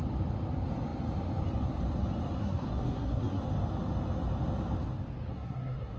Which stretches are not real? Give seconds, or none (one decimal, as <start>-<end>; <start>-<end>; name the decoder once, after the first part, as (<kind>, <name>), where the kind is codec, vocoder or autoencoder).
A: 2.4-3.4 (codec, SNAC); 5.3-6.0

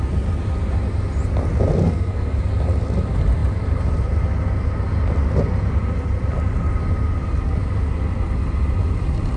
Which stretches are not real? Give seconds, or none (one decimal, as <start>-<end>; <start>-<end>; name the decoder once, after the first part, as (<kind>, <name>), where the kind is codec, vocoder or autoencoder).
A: 1.8-2.4 (codec, SNAC)